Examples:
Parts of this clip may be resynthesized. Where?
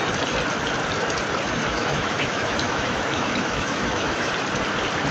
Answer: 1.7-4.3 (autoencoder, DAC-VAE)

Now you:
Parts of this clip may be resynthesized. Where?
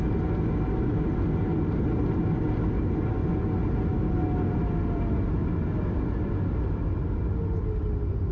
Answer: none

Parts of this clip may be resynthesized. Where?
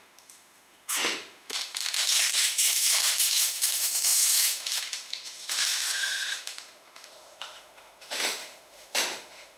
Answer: 0.0-9.6 (autoencoder, DAC-VAE)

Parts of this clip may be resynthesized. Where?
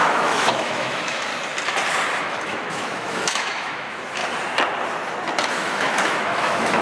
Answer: 0.0-1.3 (autoencoder, DAC-VAE); 2.2-4.2; 5.5-6.8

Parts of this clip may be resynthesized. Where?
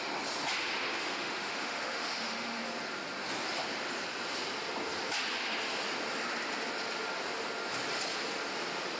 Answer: 1.0-2.6 (autoencoder, DAC-VAE)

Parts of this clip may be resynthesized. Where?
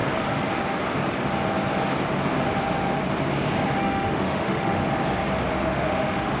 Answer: 3.8-4.8 (autoencoder, DAC-VAE); 5.4-6.4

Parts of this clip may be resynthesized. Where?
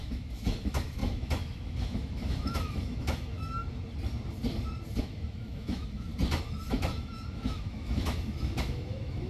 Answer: 0.0-3.6 (autoencoder, DAC-VAE); 5.0-6.1; 6.7-9.3